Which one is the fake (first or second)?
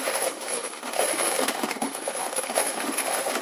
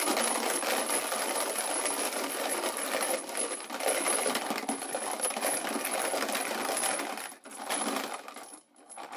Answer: first